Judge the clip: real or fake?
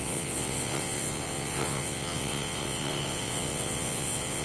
fake